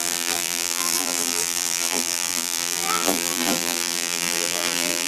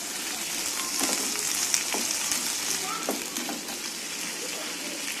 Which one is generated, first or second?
first